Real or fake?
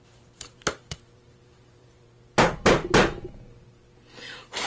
fake